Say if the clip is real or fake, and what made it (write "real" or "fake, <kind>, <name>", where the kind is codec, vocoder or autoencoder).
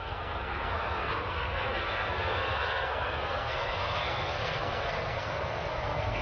fake, codec, SNAC